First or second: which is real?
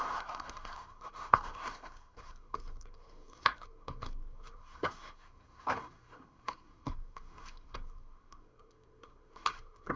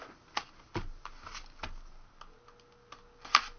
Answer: second